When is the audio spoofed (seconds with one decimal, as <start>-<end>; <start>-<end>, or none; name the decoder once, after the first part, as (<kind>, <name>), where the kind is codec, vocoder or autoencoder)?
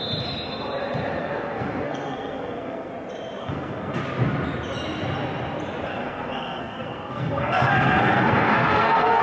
1.2-2.9 (codec, SNAC); 3.4-4.0; 5.9-9.2